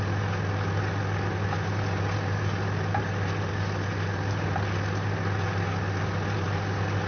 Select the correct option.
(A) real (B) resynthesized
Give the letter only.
A